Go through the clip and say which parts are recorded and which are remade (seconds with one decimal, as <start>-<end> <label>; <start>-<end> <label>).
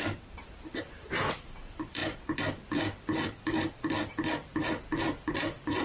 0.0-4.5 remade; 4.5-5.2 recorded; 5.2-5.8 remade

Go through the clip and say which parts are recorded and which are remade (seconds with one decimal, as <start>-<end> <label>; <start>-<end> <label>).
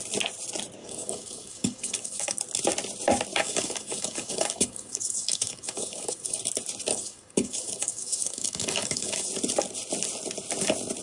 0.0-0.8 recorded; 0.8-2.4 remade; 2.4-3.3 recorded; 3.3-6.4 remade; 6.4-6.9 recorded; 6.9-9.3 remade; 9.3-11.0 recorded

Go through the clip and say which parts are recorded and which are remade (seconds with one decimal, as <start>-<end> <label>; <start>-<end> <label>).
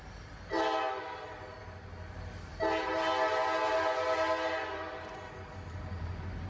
0.0-6.5 recorded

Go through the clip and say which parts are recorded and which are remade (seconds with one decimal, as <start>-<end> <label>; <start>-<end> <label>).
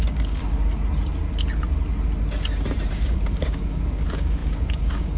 0.0-0.4 remade; 0.4-2.9 recorded; 2.9-5.2 remade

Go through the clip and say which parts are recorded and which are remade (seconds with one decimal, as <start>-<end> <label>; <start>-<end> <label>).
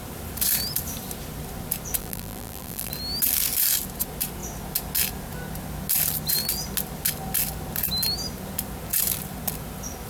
0.0-2.0 recorded; 2.0-2.9 remade; 2.9-10.1 recorded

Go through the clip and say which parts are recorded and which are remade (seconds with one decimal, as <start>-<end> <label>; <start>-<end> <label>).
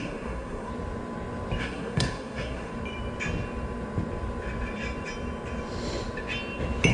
0.0-0.7 remade; 0.7-1.6 recorded; 1.6-2.7 remade; 2.7-6.9 recorded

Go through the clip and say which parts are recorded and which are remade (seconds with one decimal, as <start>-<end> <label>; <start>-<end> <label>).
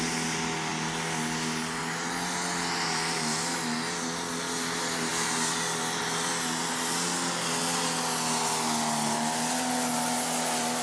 0.0-10.8 recorded